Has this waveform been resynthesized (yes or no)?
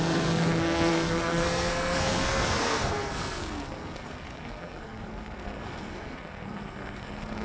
yes